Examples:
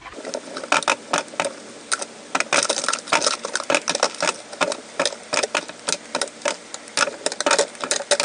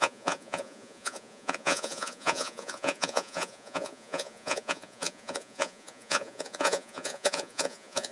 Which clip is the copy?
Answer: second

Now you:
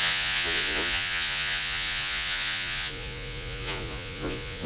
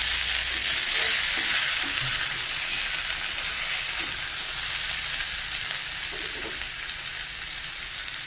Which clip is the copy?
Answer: first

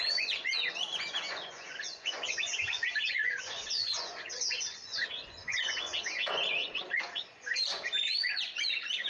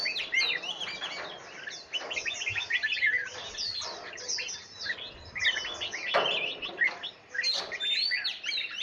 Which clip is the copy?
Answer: first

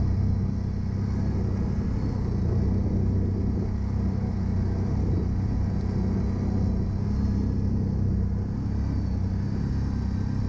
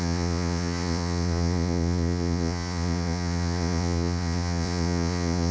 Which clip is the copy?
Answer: second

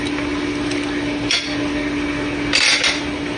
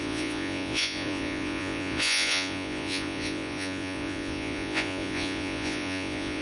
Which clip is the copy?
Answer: second